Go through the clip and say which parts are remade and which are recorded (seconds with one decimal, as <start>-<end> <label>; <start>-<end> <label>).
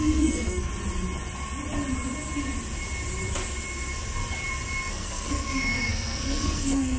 0.0-0.7 remade; 0.7-4.9 recorded; 4.9-7.0 remade